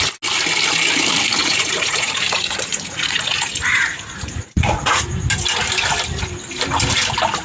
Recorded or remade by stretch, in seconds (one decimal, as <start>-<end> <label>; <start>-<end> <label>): 0.0-1.4 recorded; 1.4-5.1 remade; 5.1-7.4 recorded